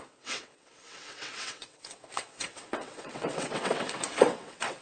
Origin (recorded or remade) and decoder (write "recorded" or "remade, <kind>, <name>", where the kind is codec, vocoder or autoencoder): remade, vocoder, WaveNeXt